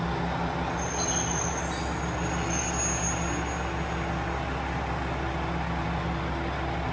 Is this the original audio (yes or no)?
yes